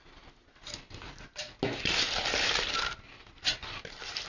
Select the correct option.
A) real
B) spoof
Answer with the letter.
A